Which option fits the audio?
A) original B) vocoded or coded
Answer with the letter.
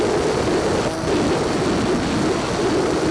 A